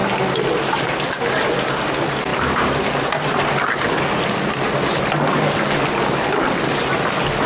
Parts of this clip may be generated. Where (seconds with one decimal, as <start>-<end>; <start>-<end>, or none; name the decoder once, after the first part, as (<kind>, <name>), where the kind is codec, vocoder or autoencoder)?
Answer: none